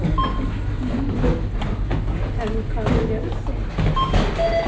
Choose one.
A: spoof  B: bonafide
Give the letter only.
B